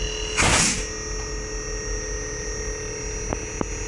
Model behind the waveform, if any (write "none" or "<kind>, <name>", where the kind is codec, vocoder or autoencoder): none